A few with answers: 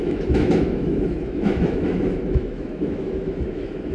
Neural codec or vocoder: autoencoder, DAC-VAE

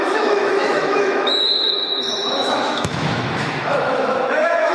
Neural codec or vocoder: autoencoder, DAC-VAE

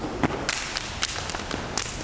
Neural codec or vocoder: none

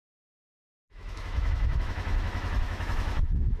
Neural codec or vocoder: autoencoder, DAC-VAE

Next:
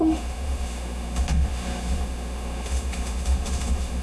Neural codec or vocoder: autoencoder, DAC-VAE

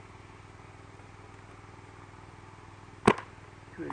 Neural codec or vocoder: none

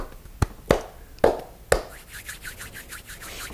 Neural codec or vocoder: none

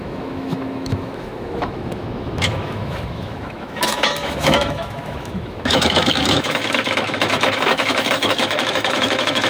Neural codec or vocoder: autoencoder, DAC-VAE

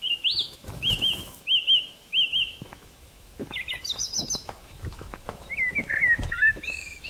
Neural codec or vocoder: autoencoder, DAC-VAE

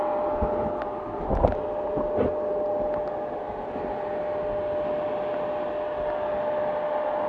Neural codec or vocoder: none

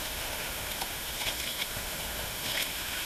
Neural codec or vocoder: autoencoder, DAC-VAE